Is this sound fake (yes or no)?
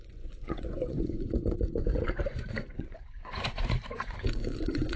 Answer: yes